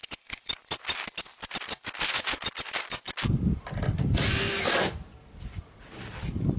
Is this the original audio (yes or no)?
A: yes